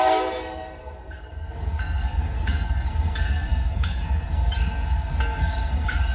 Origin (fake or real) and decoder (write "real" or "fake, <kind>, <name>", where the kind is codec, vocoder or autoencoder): fake, codec, SNAC